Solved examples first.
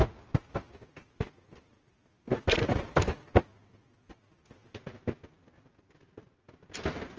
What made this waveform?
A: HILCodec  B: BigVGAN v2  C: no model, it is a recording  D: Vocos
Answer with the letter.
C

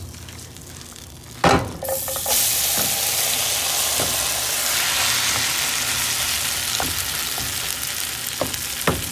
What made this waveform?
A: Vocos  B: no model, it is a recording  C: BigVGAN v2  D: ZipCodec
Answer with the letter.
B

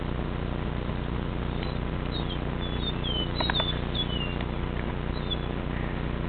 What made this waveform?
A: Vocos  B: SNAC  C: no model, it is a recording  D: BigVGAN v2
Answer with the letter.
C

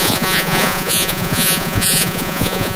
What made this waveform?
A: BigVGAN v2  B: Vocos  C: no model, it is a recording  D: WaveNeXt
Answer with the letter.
B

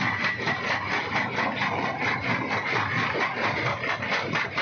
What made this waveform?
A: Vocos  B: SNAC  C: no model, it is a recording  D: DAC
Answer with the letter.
C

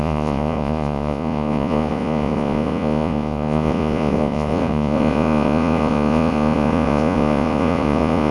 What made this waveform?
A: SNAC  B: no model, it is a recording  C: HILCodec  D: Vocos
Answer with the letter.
D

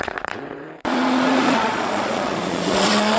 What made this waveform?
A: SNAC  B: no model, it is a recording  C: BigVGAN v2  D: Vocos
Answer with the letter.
D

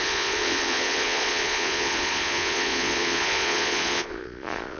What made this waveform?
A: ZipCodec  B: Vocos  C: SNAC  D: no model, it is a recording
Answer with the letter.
B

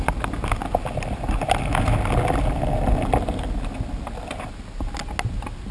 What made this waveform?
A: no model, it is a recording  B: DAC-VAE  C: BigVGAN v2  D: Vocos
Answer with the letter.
A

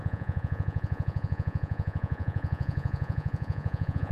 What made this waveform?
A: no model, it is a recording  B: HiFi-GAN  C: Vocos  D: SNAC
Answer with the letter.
C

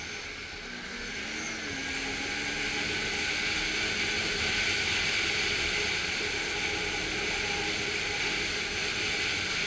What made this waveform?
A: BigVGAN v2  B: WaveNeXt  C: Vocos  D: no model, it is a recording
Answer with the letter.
D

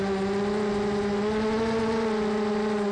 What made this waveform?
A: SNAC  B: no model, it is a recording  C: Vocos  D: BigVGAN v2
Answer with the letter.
B